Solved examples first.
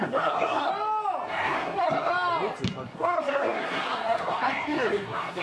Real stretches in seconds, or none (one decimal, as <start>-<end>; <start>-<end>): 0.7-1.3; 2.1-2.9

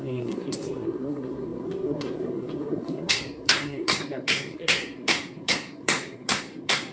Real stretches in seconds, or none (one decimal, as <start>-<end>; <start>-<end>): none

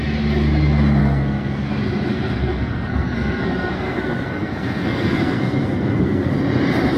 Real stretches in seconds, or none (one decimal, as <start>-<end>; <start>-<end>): 0.0-1.0; 1.7-2.1; 6.3-7.0

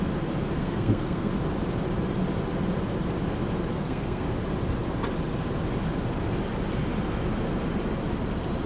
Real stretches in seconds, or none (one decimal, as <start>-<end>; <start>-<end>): 0.0-0.6; 1.3-3.7; 4.3-8.7

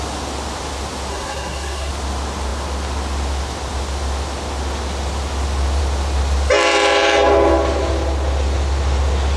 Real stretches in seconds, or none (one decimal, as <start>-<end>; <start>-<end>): 0.0-1.1; 1.9-9.4

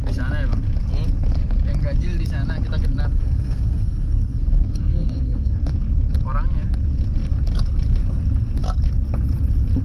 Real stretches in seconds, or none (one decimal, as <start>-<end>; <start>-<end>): 0.0-3.1; 5.6-9.8

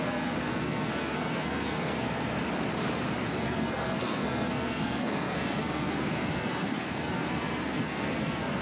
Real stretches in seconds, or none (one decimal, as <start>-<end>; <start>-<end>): 2.3-3.3